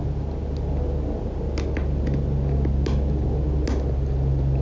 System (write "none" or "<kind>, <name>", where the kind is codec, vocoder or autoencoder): none